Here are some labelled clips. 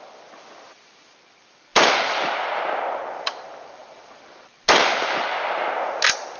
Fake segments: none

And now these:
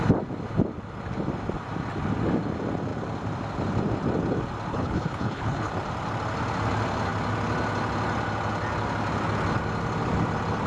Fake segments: 4.7-5.7 (codec, HILCodec)

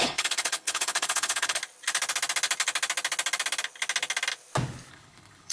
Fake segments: 0.0-1.6 (codec, HILCodec); 4.9-5.5

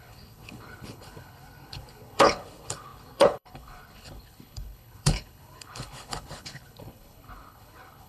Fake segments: 0.0-8.1 (codec, HILCodec)